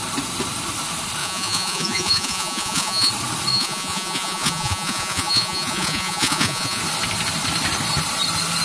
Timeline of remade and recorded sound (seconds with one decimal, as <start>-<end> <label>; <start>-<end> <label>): 0.0-1.2 recorded; 1.2-3.1 remade; 3.1-3.5 recorded; 3.5-6.8 remade; 6.8-8.6 recorded